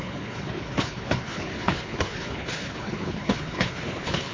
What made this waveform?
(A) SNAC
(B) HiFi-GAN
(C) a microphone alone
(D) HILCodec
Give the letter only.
D